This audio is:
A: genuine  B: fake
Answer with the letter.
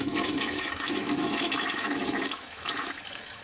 B